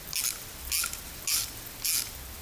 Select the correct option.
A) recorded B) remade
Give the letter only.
A